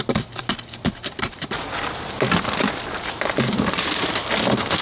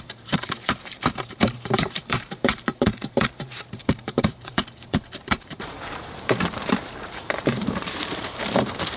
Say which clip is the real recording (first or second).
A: first